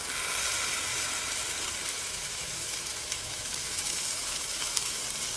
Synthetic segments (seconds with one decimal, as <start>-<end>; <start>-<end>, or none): 1.9-5.0